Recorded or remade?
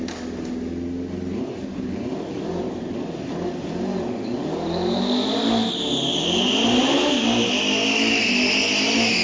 recorded